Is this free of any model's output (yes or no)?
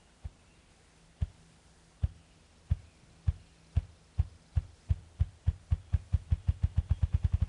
yes